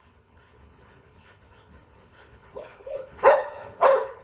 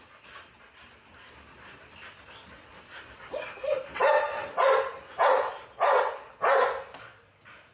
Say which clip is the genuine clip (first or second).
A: second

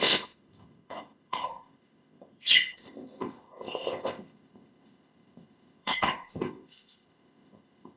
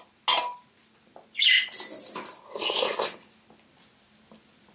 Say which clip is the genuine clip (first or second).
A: second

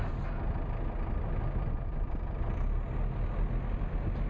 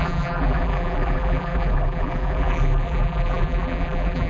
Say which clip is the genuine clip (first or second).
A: first